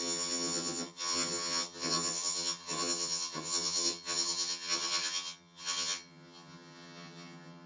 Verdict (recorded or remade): remade